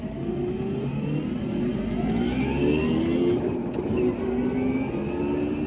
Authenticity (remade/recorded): recorded